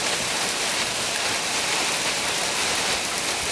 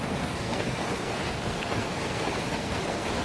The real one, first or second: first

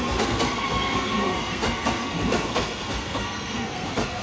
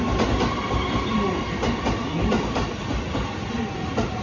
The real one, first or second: second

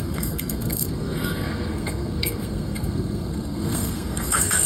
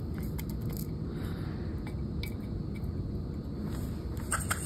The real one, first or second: second